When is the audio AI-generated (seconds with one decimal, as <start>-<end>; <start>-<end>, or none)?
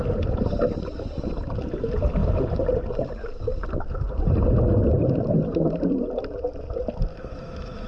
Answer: 7.1-7.9